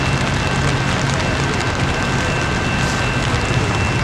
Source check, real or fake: real